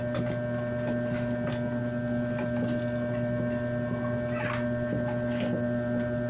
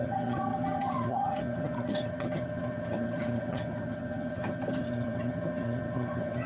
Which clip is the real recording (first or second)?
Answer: first